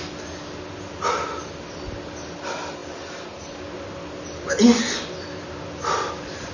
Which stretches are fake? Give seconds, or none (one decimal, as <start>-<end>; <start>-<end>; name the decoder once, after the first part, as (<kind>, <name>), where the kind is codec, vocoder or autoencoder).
2.8-3.4 (vocoder, BigVGAN v2)